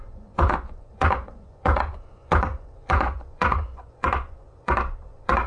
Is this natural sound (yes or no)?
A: no